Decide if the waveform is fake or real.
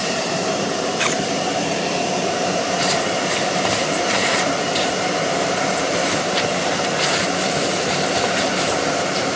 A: fake